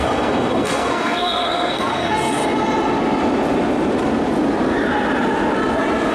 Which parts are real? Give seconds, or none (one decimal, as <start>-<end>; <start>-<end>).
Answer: 2.4-6.1